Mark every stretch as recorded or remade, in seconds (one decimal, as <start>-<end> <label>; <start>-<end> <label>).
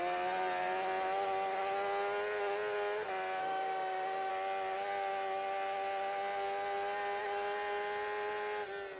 0.0-3.4 recorded; 3.4-4.3 remade; 4.3-9.0 recorded